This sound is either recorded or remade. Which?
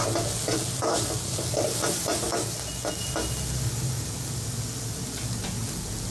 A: recorded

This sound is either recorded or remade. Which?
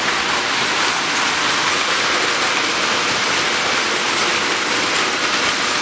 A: recorded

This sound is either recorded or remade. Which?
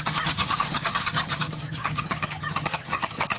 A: remade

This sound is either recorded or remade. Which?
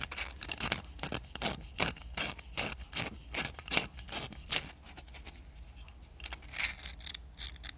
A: recorded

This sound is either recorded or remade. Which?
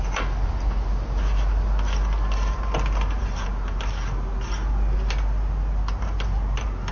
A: recorded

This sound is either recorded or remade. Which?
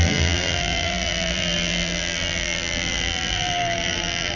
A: remade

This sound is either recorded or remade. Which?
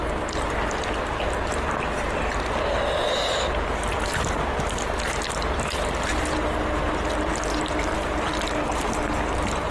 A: recorded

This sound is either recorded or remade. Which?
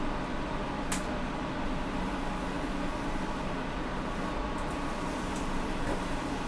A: recorded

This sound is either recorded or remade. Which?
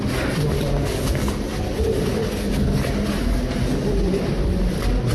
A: recorded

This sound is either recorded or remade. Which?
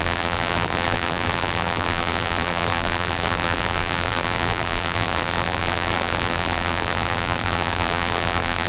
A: remade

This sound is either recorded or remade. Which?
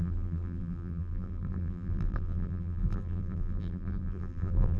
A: remade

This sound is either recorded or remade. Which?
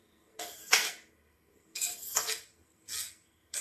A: remade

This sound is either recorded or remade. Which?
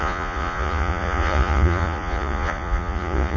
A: remade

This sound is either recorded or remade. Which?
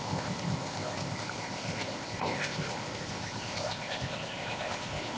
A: remade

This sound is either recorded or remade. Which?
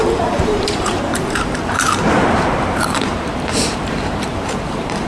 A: remade